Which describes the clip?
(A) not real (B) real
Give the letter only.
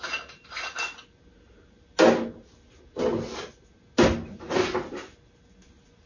B